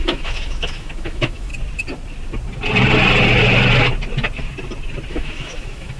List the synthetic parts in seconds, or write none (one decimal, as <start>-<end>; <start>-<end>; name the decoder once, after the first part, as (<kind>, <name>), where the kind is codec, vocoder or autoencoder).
0.0-1.5 (autoencoder, DAC-VAE); 5.1-6.0